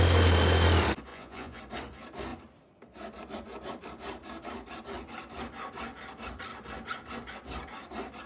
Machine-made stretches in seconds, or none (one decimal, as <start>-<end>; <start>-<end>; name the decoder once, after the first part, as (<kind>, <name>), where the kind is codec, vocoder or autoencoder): 1.1-1.6 (vocoder, Vocos)